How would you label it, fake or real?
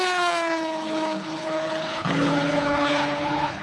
fake